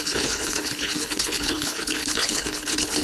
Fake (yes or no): yes